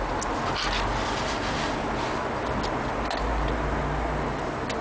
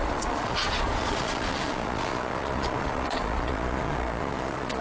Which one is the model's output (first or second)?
second